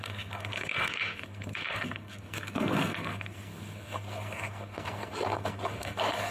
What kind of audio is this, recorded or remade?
remade